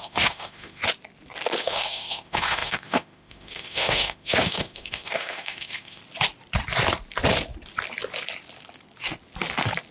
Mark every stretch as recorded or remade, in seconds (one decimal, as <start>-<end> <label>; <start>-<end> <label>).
0.0-0.8 remade; 0.8-1.6 recorded; 1.6-6.0 remade; 6.0-9.9 recorded